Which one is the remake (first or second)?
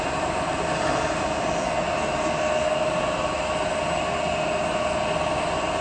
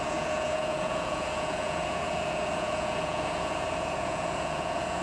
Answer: second